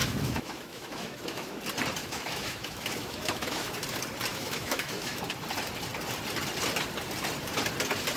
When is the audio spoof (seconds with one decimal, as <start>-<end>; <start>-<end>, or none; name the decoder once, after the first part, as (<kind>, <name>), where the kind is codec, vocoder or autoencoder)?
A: 0.0-1.6 (autoencoder, DAC-VAE); 2.0-3.7; 4.3-5.2